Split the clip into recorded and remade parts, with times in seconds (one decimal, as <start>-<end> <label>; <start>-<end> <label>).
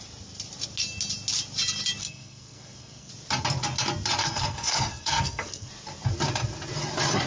0.0-2.0 recorded; 2.0-3.1 remade; 3.1-4.2 recorded; 4.2-5.7 remade; 5.7-7.3 recorded